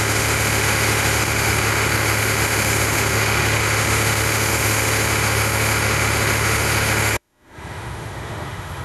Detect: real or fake fake